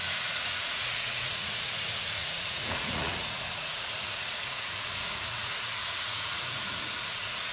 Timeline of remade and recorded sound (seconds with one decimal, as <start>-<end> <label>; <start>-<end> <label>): 0.0-7.5 remade